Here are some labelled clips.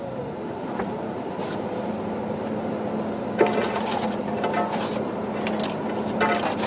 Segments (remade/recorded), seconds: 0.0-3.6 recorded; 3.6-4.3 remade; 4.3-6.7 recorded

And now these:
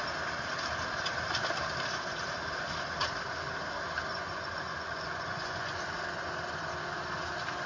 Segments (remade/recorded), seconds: 0.0-4.1 recorded; 4.1-5.8 remade; 5.8-7.7 recorded

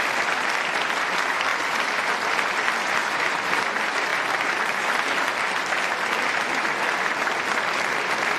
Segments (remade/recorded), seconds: 0.0-1.5 recorded; 1.5-3.5 remade; 3.5-8.4 recorded